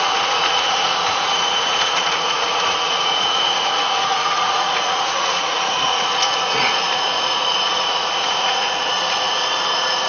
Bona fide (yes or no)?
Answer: no